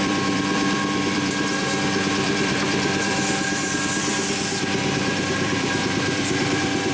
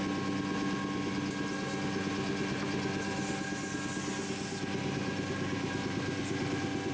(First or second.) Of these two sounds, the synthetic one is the first